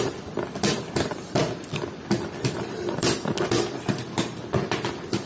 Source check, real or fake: fake